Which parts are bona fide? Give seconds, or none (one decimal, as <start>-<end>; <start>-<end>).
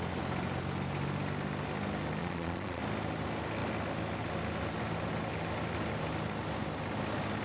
0.0-2.2; 2.8-7.4